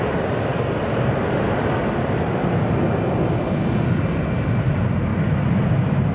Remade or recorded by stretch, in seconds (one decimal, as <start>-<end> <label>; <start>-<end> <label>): 0.0-6.1 recorded